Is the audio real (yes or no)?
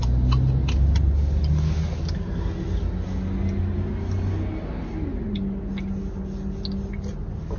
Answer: yes